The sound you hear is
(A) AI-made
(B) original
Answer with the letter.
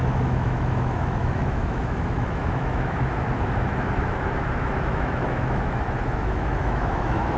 A